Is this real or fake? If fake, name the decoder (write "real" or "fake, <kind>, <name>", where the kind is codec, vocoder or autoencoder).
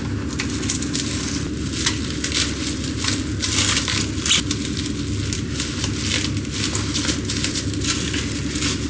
real